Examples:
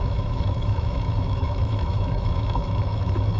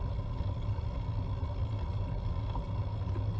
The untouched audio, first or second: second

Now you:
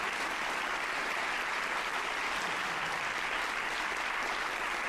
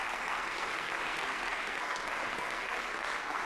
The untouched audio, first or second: first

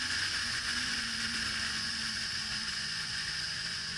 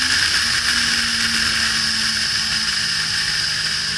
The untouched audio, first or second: second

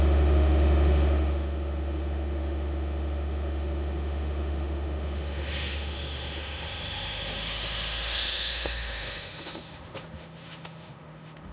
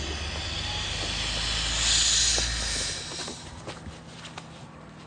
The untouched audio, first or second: second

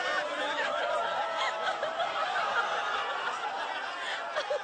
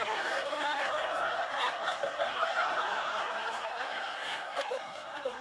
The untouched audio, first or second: first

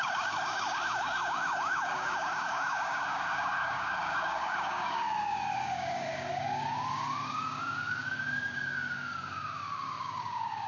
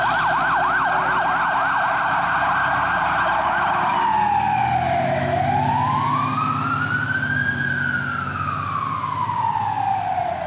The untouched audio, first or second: second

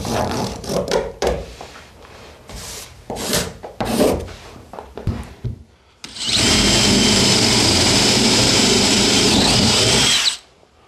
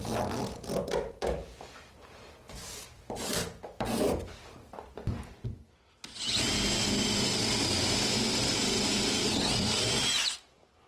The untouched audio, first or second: second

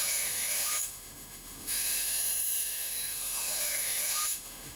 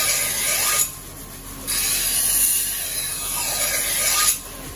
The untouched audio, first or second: second